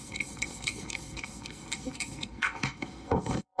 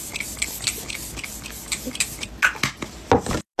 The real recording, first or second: second